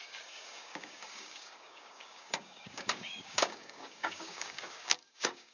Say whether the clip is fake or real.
fake